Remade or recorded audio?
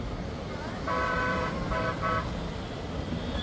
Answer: remade